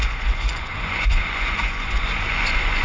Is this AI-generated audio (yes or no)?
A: yes